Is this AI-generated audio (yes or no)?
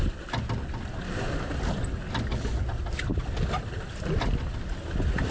no